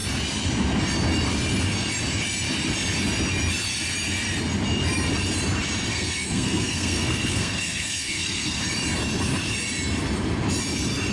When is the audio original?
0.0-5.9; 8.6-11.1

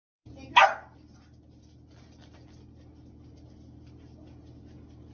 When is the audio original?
0.0-5.1